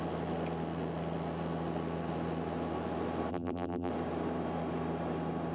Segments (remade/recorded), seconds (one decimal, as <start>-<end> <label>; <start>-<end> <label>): 0.0-3.3 recorded; 3.3-3.9 remade; 3.9-5.5 recorded

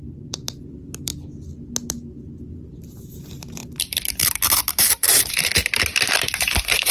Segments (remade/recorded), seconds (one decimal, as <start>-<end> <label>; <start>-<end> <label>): 0.0-1.1 remade; 1.1-2.5 recorded; 2.5-5.5 remade; 5.5-6.2 recorded; 6.2-6.9 remade

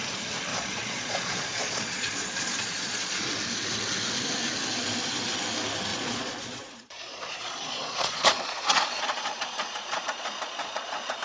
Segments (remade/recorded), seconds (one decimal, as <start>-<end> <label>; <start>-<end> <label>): 0.0-0.5 recorded; 0.5-3.3 remade; 3.3-5.9 recorded; 5.9-11.2 remade

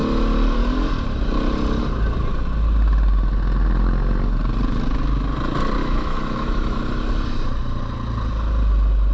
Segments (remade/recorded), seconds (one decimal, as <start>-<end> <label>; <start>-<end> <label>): 0.0-5.8 recorded; 5.8-6.8 remade; 6.8-9.1 recorded

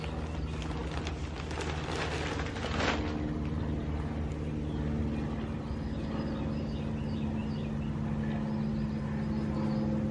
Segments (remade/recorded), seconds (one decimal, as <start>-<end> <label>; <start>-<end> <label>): 0.0-10.1 recorded

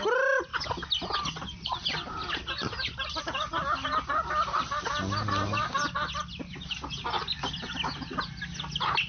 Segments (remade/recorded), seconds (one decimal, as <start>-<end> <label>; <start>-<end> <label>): 0.0-9.1 recorded